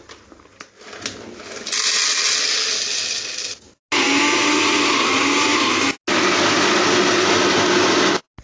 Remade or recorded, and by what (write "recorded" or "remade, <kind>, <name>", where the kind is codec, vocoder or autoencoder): recorded